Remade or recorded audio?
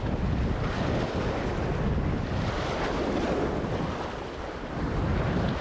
recorded